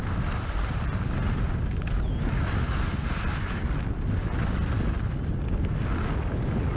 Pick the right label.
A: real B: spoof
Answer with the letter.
A